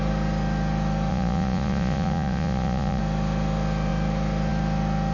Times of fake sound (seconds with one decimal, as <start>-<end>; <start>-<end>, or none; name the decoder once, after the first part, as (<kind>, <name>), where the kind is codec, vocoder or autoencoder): 1.1-3.0 (vocoder, Vocos)